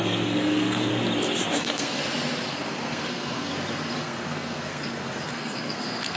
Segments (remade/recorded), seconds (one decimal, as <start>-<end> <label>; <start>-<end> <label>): 0.0-0.9 remade; 0.9-1.5 recorded; 1.5-2.0 remade; 2.0-2.5 recorded; 2.5-3.5 remade; 3.5-4.0 recorded; 4.0-6.2 remade